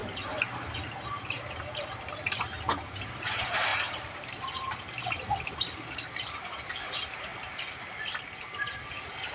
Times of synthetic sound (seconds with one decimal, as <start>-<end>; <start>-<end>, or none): 0.0-7.3; 8.5-9.3